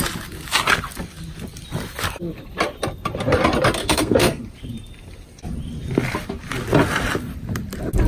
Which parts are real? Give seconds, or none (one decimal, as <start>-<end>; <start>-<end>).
0.0-3.8; 4.4-8.1

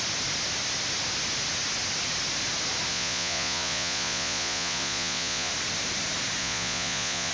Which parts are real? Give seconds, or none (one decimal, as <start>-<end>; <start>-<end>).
0.0-2.9; 5.5-6.4

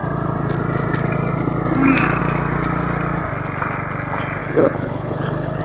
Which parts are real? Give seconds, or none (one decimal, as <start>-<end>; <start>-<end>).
0.0-4.4

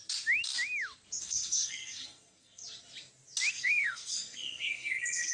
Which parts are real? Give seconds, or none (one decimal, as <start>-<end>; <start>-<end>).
0.0-1.2; 2.6-3.5